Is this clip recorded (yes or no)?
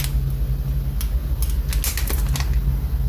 yes